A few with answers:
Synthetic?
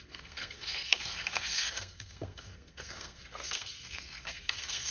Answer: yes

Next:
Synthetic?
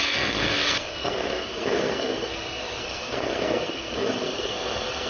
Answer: yes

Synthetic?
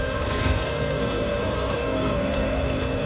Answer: yes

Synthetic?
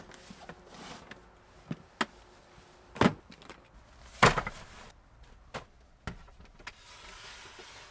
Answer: no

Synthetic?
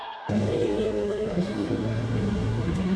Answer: yes